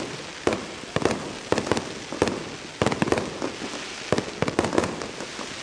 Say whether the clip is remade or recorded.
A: recorded